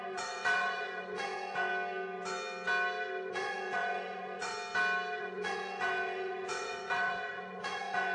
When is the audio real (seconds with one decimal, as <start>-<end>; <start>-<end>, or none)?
1.7-3.3; 4.5-5.2